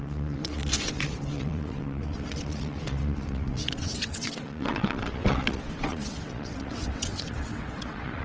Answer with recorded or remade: remade